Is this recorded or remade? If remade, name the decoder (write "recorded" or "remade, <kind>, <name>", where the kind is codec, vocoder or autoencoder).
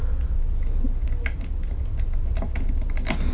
recorded